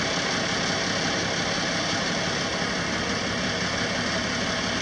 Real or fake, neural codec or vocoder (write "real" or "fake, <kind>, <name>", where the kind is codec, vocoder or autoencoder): real